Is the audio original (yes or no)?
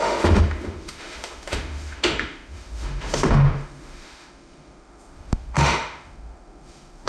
no